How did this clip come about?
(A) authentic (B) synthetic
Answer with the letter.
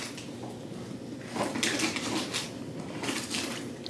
A